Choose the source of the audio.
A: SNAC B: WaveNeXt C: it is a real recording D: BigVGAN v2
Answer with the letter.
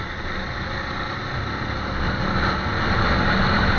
C